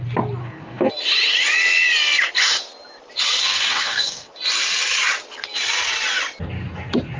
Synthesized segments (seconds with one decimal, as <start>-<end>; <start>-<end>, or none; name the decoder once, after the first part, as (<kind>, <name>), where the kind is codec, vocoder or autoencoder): 0.4-0.9 (codec, DAC); 3.4-4.3